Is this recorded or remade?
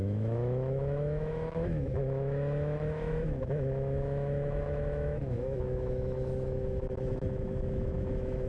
remade